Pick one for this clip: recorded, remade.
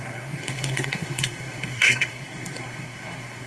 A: remade